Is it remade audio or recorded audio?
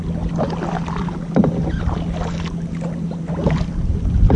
recorded